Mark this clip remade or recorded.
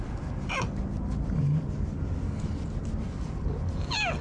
recorded